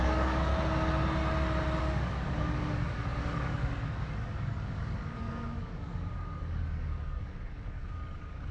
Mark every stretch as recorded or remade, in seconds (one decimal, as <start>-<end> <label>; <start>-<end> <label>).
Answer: 0.0-0.5 remade; 0.5-1.8 recorded; 1.8-8.5 remade

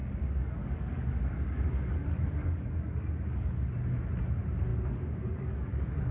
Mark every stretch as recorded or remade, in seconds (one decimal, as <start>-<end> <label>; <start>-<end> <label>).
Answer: 0.0-3.7 remade; 3.7-4.7 recorded; 4.7-6.1 remade

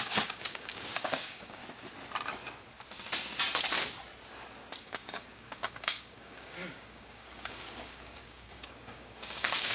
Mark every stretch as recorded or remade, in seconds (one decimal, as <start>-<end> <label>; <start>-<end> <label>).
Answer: 0.0-1.6 remade; 1.6-4.8 recorded; 4.8-9.7 remade

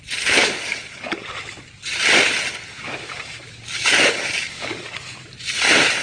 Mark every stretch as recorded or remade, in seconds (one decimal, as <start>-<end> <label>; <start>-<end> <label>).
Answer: 0.0-0.4 recorded; 0.4-1.2 remade; 1.2-2.7 recorded; 2.7-5.0 remade; 5.0-6.0 recorded

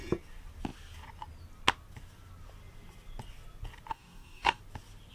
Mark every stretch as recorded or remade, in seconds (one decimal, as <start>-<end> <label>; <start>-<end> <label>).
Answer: 0.0-3.9 recorded; 3.9-4.6 remade; 4.6-5.1 recorded

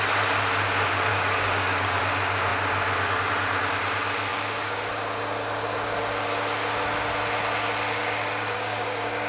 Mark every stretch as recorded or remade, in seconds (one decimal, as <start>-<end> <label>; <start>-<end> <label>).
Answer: 0.0-1.1 recorded; 1.1-2.0 remade; 2.0-4.3 recorded; 4.3-4.9 remade; 4.9-8.0 recorded; 8.0-9.3 remade

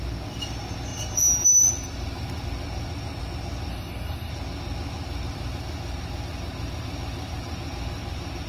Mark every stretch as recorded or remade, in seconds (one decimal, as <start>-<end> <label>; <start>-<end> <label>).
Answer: 0.0-3.7 recorded; 3.7-4.3 remade; 4.3-8.5 recorded